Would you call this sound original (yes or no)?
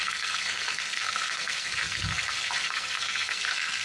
no